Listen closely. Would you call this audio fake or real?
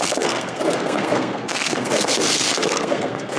fake